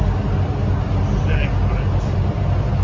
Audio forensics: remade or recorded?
recorded